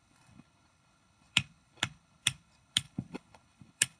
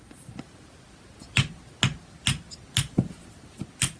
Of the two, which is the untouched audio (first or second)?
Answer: second